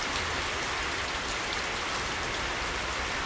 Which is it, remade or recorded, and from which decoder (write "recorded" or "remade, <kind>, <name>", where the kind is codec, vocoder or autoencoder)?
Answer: remade, vocoder, BigVGAN v2